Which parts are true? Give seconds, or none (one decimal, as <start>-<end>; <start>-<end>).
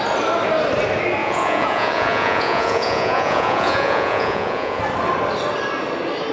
0.0-1.2; 4.8-6.3